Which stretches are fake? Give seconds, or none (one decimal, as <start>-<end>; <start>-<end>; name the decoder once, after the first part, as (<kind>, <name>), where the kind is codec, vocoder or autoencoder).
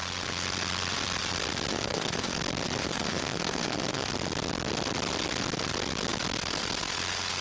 1.7-2.4 (autoencoder, DAC-VAE); 2.8-4.1